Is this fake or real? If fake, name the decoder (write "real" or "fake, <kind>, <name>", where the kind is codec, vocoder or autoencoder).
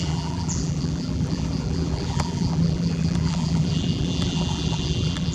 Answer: fake, vocoder, BigVGAN v2